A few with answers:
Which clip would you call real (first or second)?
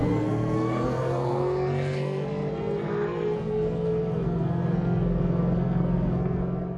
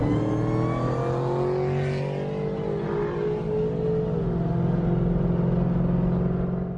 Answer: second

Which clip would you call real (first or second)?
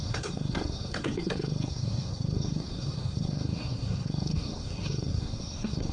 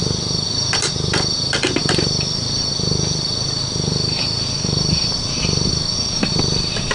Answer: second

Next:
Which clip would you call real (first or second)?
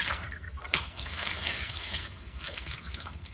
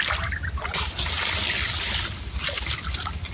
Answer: second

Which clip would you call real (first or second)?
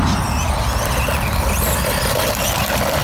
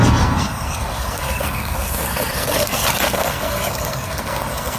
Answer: first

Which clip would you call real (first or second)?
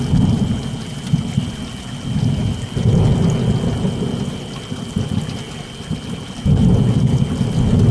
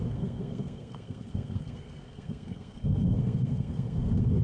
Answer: first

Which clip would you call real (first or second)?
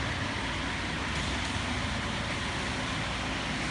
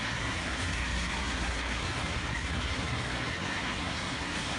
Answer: first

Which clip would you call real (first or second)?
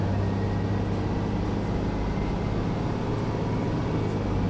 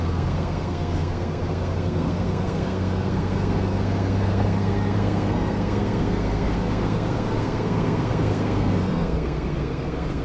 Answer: first